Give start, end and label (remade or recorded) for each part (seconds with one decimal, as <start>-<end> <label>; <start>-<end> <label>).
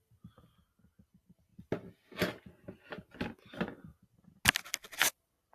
0.0-5.5 recorded